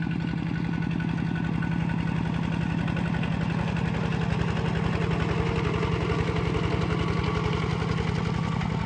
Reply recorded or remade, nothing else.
recorded